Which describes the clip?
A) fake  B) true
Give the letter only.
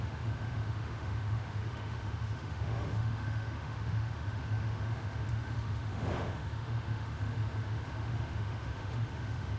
A